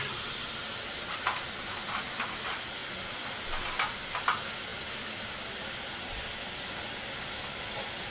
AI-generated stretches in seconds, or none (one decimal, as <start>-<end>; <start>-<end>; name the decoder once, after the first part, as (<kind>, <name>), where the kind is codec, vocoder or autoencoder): none